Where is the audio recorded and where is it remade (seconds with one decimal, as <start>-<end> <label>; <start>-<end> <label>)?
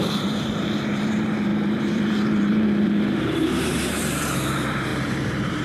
0.0-5.6 remade